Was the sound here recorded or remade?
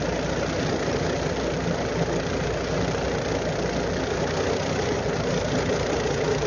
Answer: recorded